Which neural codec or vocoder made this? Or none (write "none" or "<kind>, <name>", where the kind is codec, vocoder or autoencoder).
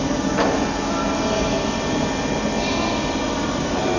none